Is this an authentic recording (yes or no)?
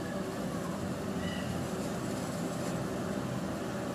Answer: yes